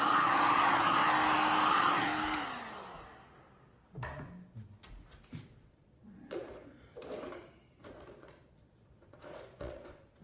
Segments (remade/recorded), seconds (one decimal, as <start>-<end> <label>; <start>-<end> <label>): 0.0-1.0 remade; 1.0-1.7 recorded; 1.7-2.1 remade; 2.1-5.5 recorded; 5.5-6.9 remade; 6.9-7.9 recorded; 7.9-10.2 remade